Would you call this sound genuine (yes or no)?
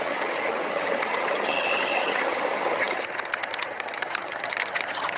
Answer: no